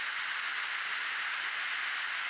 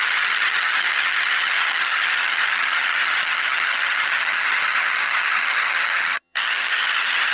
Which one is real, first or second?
first